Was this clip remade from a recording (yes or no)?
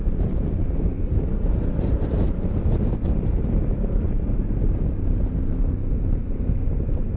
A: yes